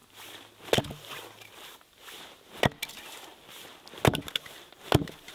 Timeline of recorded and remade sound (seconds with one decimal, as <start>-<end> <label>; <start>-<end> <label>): 0.0-5.3 recorded